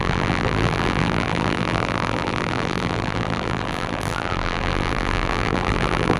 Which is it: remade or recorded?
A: remade